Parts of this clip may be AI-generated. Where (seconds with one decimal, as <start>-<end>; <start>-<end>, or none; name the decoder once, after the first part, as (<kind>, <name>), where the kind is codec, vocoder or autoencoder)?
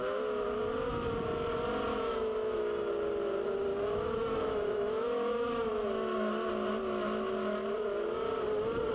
1.9-2.9 (autoencoder, DAC-VAE); 3.7-6.5